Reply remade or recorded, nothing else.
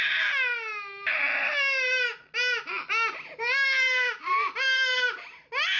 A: recorded